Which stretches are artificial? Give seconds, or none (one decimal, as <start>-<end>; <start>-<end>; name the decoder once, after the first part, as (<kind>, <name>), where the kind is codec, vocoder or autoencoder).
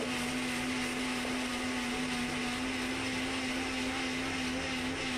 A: none